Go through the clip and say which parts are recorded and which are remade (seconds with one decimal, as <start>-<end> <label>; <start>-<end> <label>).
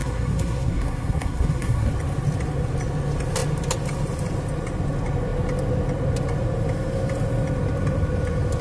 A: 0.0-1.9 remade; 1.9-8.6 recorded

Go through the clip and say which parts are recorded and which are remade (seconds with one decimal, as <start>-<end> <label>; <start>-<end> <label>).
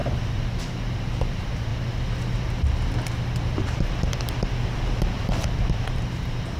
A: 0.0-1.7 remade; 1.7-5.7 recorded; 5.7-6.6 remade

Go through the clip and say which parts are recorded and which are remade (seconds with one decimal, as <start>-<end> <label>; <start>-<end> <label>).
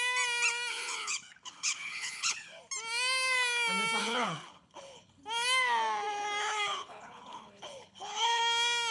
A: 0.0-0.7 recorded; 0.7-2.6 remade; 2.6-4.0 recorded; 4.0-5.2 remade; 5.2-6.4 recorded; 6.4-8.4 remade; 8.4-8.9 recorded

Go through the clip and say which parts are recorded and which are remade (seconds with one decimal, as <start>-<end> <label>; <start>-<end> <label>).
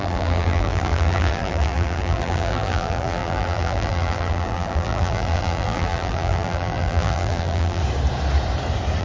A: 0.0-7.8 remade; 7.8-9.0 recorded